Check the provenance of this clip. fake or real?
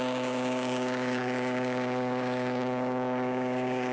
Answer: fake